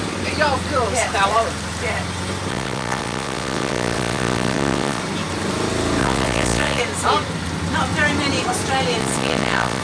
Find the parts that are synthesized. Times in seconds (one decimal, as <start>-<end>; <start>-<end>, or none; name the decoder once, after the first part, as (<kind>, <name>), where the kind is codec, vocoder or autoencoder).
2.5-5.0 (vocoder, WaveNeXt); 6.0-6.8; 9.0-9.8